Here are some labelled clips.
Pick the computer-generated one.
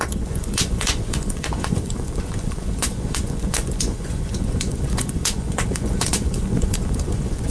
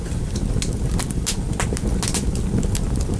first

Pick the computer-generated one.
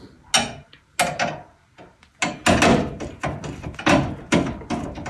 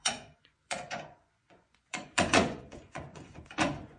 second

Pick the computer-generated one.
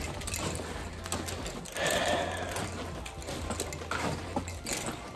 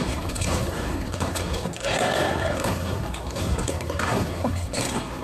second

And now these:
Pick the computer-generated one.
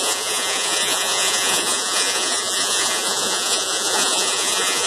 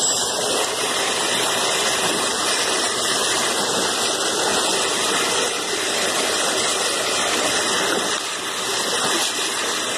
first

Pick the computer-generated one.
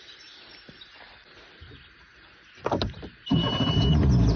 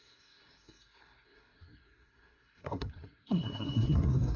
second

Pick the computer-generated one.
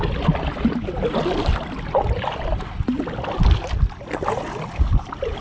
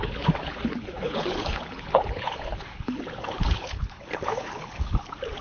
second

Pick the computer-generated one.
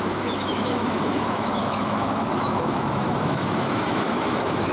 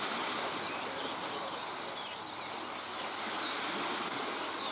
first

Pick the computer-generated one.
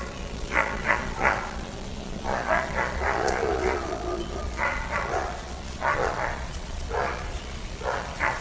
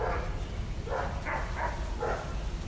first